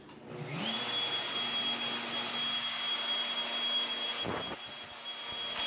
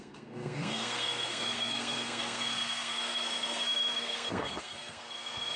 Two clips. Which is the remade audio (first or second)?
second